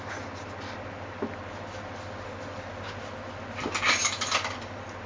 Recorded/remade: recorded